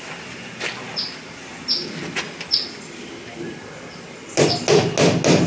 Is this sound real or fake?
real